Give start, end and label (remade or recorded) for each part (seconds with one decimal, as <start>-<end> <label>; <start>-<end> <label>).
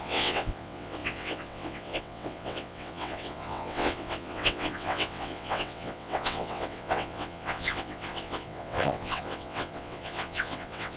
0.0-11.0 remade